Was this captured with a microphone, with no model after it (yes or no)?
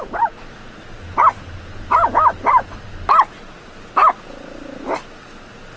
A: yes